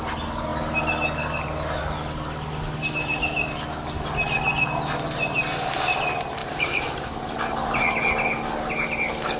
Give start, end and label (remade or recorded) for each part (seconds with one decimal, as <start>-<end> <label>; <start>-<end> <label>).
0.0-6.4 recorded; 6.4-7.0 remade; 7.0-9.4 recorded